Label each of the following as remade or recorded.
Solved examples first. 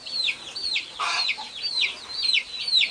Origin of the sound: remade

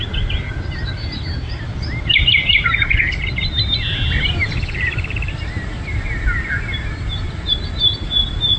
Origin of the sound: recorded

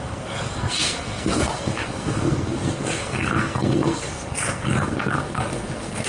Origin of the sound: remade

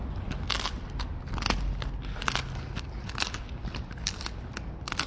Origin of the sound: recorded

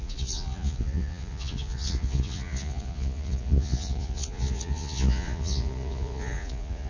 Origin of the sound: remade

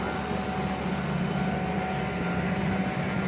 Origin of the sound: recorded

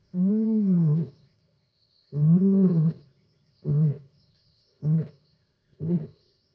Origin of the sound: remade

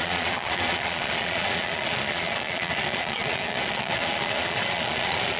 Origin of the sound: remade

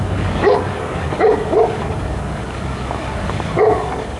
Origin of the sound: remade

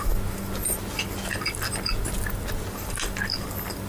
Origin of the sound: recorded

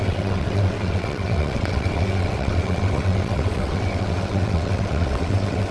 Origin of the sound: remade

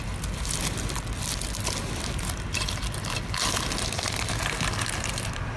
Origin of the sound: recorded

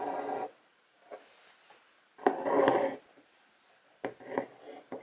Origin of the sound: recorded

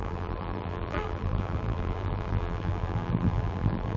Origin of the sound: remade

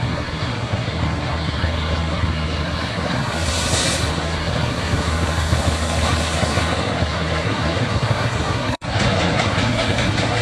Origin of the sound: remade